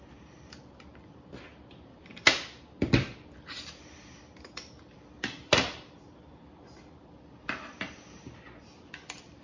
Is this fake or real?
fake